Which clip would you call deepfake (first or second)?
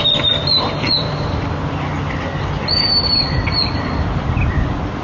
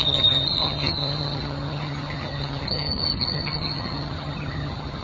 second